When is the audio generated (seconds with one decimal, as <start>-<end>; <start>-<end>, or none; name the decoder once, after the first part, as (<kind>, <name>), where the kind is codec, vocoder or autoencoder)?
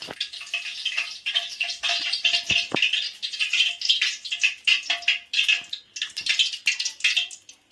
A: none